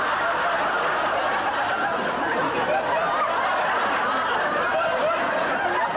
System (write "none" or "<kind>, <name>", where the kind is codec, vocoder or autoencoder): none